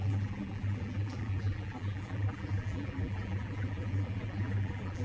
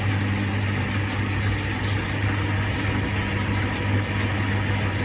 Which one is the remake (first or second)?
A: first